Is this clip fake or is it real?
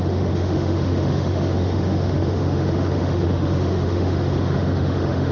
fake